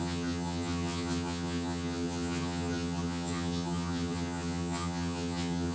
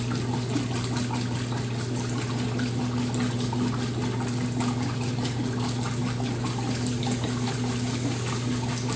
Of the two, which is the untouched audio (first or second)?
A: second